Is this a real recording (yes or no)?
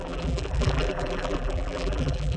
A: no